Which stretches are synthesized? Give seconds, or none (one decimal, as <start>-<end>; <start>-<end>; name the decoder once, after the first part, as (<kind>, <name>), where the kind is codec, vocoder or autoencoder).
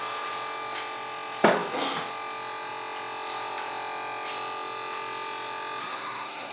5.8-6.5 (codec, SNAC)